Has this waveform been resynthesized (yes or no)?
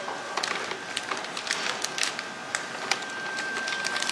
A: no